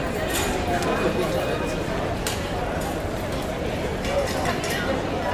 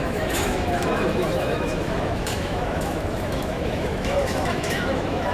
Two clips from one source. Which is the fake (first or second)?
second